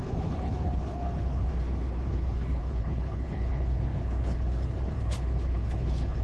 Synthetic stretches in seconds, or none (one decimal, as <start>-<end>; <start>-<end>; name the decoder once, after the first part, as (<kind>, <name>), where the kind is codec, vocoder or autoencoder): 0.0-6.2 (codec, HILCodec)